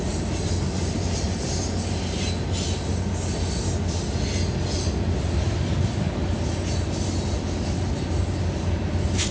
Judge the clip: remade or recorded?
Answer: recorded